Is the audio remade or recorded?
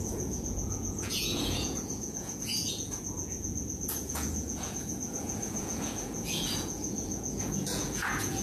remade